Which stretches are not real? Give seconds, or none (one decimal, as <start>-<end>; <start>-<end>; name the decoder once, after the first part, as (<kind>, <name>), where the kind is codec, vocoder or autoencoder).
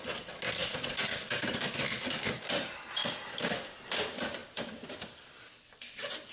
0.6-3.1 (vocoder, BigVGAN v2); 4.4-6.3